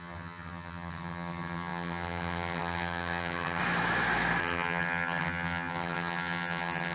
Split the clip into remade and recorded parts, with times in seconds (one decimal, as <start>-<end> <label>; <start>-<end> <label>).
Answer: 0.0-3.6 remade; 3.6-4.4 recorded; 4.4-6.9 remade